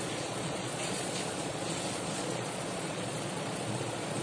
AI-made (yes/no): yes